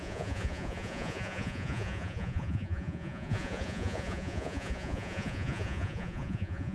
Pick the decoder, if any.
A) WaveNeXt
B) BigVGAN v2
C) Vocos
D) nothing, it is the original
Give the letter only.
C